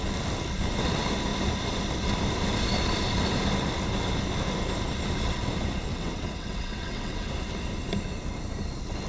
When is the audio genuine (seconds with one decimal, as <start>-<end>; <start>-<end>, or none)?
0.0-5.9; 7.3-9.1